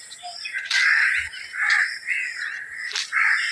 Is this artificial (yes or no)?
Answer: yes